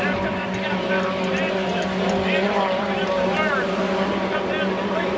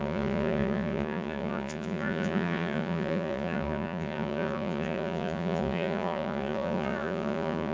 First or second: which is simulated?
second